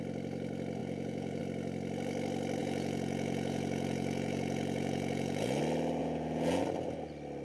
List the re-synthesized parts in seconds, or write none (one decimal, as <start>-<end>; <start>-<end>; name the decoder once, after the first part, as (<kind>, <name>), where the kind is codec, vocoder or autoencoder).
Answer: 0.8-1.4 (vocoder, Vocos); 2.6-5.6; 6.0-6.6